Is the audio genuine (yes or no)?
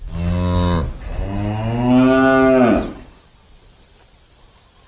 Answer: yes